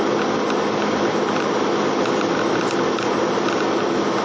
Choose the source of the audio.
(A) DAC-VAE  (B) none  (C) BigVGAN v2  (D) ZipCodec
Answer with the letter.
B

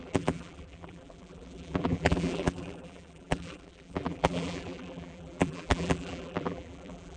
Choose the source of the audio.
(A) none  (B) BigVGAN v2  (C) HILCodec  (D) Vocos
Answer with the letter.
B